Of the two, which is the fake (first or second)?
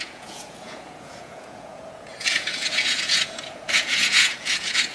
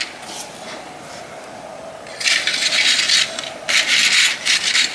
first